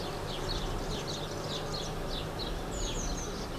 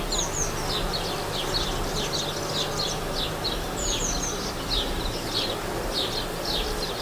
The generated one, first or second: first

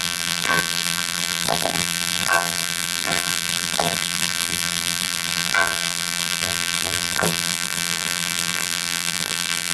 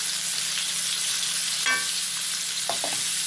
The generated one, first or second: first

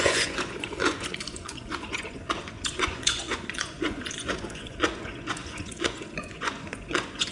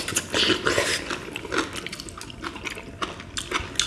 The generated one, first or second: first